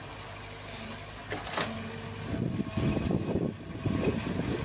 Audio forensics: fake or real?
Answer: real